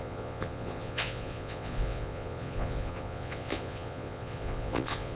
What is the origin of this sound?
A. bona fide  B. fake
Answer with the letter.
B